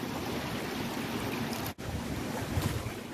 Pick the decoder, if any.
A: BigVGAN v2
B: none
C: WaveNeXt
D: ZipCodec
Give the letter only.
B